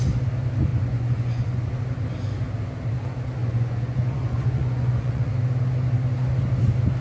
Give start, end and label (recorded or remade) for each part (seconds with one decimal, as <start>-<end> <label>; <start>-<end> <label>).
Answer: 0.0-0.7 recorded; 0.7-1.7 remade; 1.7-3.4 recorded; 3.4-5.3 remade; 5.3-7.0 recorded